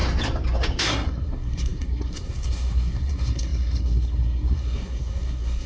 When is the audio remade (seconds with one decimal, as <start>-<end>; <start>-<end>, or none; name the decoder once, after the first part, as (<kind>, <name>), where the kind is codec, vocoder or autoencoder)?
0.8-5.7 (codec, SNAC)